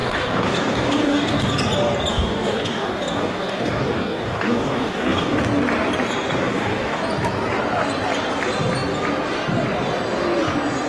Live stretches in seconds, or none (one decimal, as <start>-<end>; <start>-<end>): 1.5-2.1; 5.4-6.5; 7.0-10.9